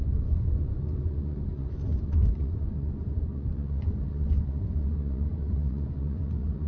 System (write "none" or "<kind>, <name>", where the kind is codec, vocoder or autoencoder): vocoder, Vocos